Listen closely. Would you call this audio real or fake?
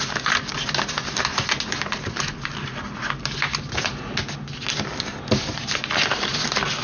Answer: real